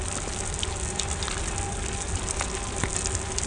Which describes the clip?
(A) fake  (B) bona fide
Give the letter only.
B